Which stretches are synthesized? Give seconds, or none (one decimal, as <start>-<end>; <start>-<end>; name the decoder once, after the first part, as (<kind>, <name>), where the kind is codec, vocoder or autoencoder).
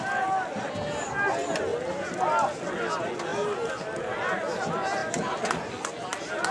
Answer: none